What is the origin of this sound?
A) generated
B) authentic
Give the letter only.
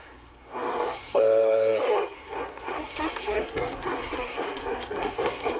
A